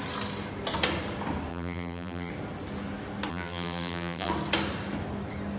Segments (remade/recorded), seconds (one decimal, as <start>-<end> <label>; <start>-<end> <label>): 0.0-1.5 recorded; 1.5-2.3 remade; 2.3-3.3 recorded; 3.3-4.3 remade; 4.3-5.6 recorded